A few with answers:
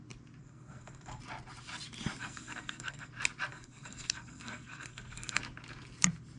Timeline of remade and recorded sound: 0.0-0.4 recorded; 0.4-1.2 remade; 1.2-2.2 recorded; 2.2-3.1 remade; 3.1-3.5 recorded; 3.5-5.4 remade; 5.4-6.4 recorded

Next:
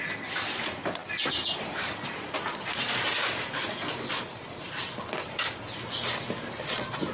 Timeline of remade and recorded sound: 0.0-7.1 recorded

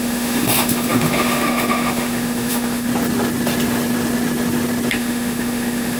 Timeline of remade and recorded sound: 0.0-2.9 remade; 2.9-4.9 recorded; 4.9-6.0 remade

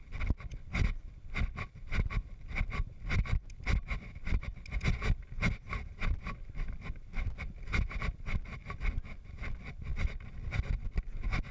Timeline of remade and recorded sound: 0.0-11.5 recorded

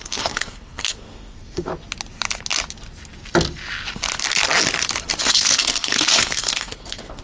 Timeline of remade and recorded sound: 0.0-1.7 remade; 1.7-5.2 recorded; 5.2-7.2 remade

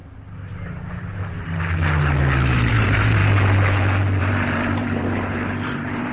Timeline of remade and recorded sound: 0.0-2.7 recorded; 2.7-3.2 remade; 3.2-4.2 recorded; 4.2-6.1 remade

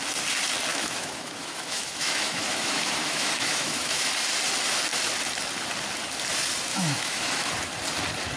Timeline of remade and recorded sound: 0.0-0.7 recorded; 0.7-4.1 remade; 4.1-6.7 recorded; 6.7-7.5 remade; 7.5-8.4 recorded

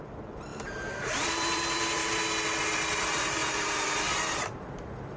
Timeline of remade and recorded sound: 0.0-2.0 remade; 2.0-2.6 recorded; 2.6-3.4 remade; 3.4-4.4 recorded; 4.4-5.2 remade